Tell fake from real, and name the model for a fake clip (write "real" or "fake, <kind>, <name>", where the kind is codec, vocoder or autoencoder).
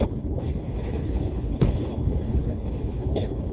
fake, codec, HILCodec